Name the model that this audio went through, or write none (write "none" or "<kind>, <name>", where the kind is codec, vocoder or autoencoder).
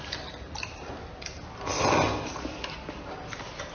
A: none